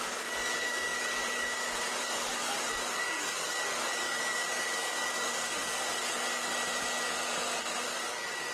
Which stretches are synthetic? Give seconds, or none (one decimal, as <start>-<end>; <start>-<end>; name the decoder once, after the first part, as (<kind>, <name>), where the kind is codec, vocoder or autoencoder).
0.0-6.5 (codec, DAC); 7.6-8.5